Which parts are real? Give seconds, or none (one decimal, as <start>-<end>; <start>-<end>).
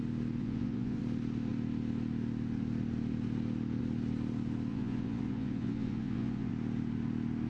0.0-0.4; 1.0-4.7; 6.5-7.5